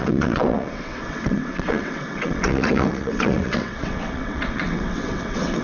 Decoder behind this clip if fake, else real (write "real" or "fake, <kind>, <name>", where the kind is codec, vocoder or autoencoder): fake, vocoder, WaveNeXt